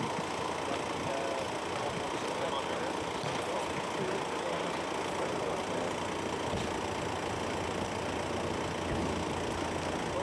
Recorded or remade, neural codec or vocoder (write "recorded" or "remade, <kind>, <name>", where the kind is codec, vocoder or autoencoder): recorded